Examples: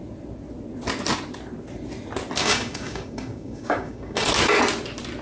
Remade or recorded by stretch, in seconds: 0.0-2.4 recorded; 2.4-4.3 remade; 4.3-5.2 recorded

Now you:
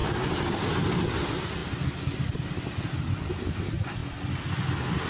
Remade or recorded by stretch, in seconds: 0.0-5.1 recorded

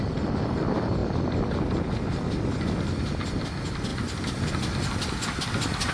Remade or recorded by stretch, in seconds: 0.0-1.0 recorded; 1.0-2.6 remade; 2.6-3.9 recorded; 3.9-4.5 remade; 4.5-5.9 recorded